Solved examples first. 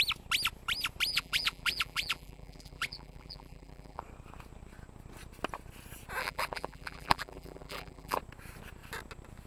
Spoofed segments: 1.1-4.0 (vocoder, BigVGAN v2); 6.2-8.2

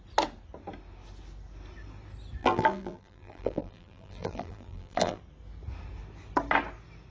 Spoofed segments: 2.4-5.2 (vocoder, BigVGAN v2)